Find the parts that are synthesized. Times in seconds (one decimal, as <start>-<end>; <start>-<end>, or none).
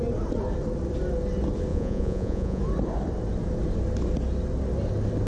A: 1.7-2.6